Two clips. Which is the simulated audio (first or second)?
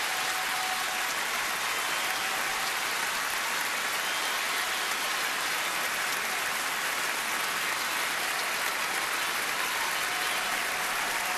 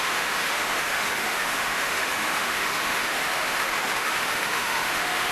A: second